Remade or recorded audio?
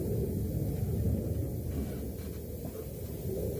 recorded